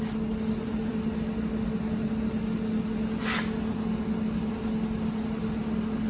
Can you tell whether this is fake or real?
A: real